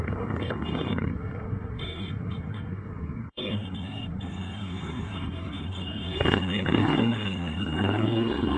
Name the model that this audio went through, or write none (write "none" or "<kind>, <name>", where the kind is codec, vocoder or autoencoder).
codec, SNAC